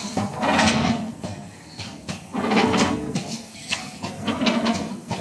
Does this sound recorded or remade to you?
remade